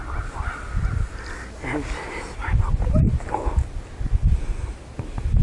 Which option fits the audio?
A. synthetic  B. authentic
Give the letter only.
B